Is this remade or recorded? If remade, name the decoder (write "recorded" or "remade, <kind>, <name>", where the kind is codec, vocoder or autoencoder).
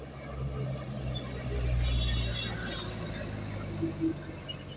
recorded